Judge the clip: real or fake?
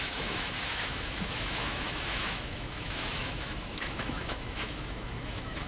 fake